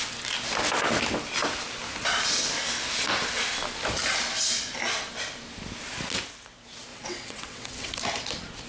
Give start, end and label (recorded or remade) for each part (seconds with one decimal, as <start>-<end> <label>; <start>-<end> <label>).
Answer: 0.0-6.9 recorded; 6.9-7.9 remade; 7.9-8.7 recorded